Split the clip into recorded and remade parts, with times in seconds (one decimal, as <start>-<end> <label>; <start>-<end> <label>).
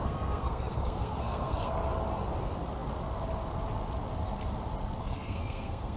0.0-1.8 remade; 1.8-5.0 recorded; 5.0-6.0 remade